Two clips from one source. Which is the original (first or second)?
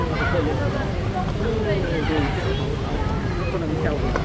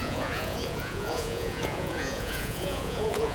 first